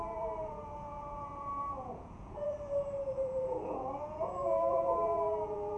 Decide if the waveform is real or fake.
fake